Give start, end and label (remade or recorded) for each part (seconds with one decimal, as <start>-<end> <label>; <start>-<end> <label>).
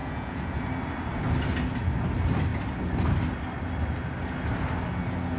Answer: 0.0-0.6 remade; 0.6-5.4 recorded